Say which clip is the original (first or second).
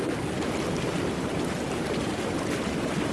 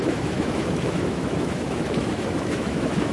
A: first